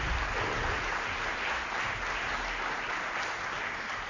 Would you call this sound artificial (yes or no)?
no